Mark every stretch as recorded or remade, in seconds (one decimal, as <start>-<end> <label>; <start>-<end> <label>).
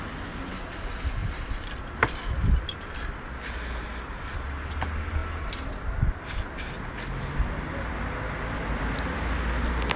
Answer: 0.0-10.0 recorded